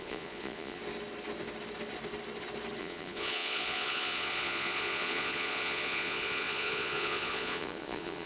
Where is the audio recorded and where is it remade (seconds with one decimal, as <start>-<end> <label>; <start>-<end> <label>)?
0.0-0.8 remade; 0.8-2.8 recorded; 2.8-8.3 remade